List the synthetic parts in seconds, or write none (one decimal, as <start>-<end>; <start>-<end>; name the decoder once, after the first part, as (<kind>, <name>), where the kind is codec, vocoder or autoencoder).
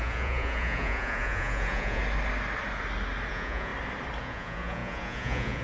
0.0-2.0 (vocoder, Vocos); 3.3-3.7; 4.2-5.6